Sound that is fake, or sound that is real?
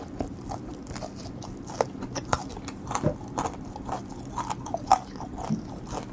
real